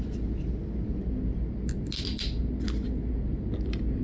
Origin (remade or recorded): recorded